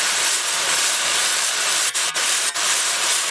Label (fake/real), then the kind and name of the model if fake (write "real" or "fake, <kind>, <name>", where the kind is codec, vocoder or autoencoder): fake, vocoder, BigVGAN v2